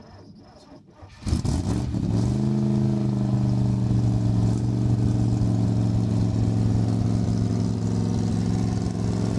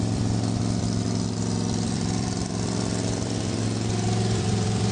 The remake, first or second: second